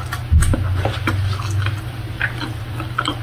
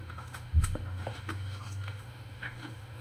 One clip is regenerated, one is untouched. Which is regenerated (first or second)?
second